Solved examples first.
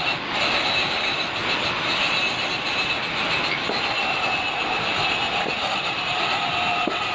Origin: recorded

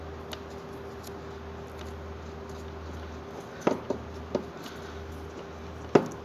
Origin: recorded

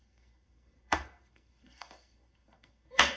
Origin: remade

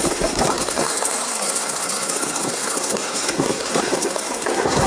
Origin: remade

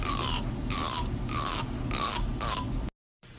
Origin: recorded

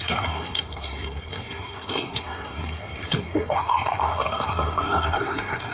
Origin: remade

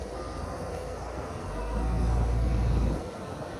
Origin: remade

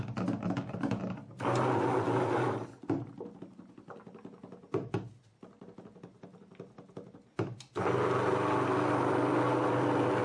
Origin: recorded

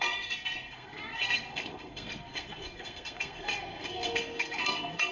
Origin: remade